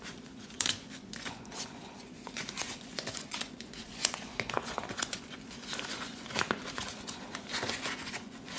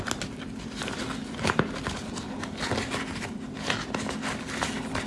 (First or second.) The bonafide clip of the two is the second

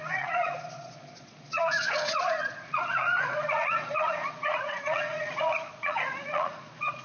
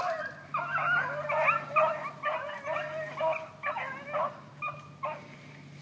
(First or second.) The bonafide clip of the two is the second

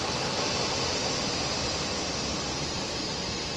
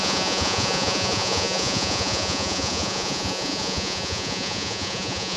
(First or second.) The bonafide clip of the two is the first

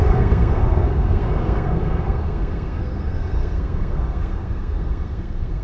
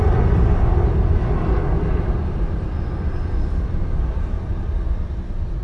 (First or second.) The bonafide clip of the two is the second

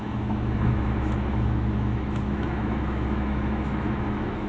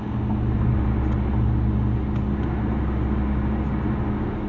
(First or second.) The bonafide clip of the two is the second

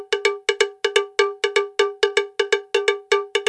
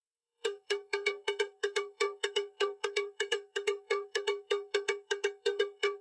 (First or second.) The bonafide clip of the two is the first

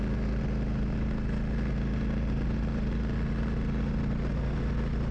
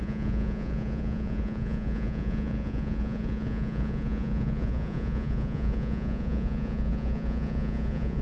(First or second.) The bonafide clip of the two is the first